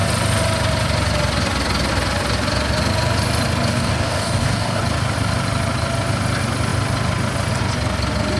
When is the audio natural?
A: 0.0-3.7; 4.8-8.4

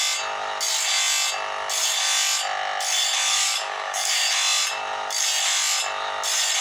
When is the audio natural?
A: 0.0-3.3; 4.1-6.6

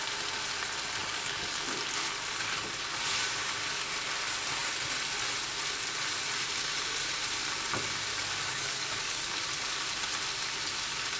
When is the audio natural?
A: 0.0-1.0; 1.8-8.1; 9.4-11.2